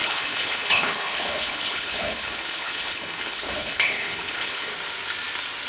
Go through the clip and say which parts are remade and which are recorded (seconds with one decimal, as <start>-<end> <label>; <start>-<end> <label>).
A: 0.0-4.7 remade; 4.7-5.7 recorded